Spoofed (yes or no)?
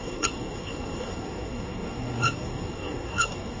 yes